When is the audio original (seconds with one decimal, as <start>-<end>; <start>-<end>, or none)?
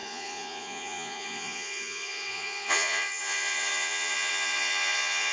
none